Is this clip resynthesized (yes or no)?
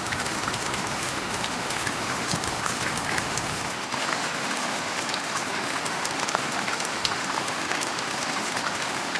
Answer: yes